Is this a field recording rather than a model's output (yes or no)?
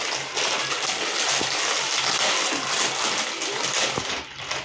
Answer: yes